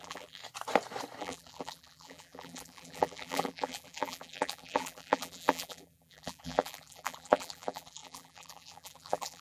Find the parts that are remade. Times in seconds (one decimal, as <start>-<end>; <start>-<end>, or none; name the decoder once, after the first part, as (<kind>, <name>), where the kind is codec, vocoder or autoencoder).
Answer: 0.0-0.4 (vocoder, BigVGAN v2); 1.2-9.4